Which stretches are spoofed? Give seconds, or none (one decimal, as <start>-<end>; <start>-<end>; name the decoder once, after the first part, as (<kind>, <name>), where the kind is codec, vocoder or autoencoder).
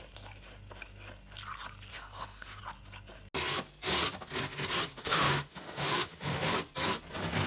1.9-2.6 (autoencoder, DAC-VAE); 5.0-6.5